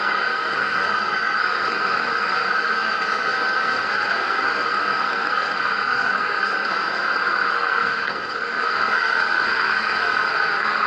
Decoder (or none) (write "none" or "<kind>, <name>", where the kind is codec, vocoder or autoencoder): codec, SNAC